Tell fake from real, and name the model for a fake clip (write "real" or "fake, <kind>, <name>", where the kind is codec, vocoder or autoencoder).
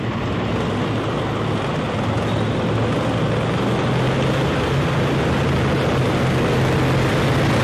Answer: real